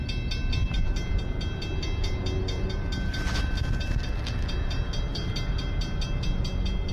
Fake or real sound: real